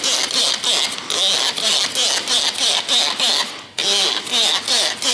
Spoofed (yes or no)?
no